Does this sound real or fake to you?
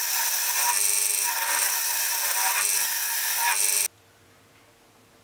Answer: real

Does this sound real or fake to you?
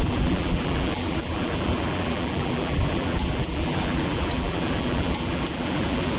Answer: fake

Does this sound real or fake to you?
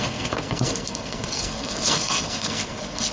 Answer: fake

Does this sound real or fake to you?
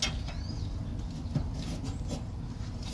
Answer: real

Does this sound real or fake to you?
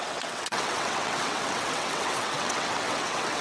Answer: fake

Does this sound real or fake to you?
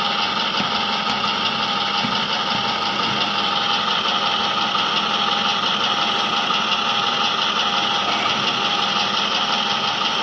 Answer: real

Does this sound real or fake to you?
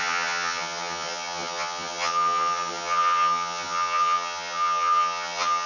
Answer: fake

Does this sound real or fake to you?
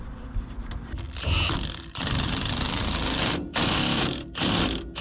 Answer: real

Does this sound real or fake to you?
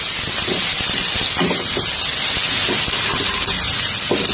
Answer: real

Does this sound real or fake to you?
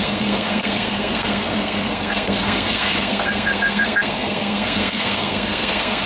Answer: fake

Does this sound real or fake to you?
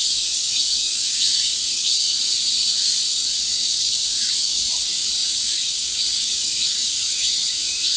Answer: fake